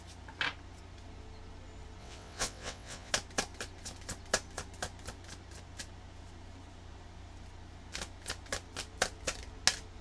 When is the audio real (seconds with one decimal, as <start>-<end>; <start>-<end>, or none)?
0.0-2.0; 3.1-10.0